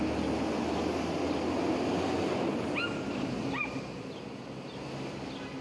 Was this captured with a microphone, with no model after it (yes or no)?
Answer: yes